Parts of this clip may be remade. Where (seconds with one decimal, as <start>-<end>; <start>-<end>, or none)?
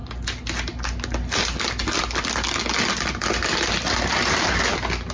none